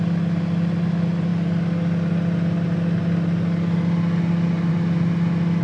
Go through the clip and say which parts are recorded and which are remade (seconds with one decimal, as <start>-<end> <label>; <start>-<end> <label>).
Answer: 0.0-5.6 recorded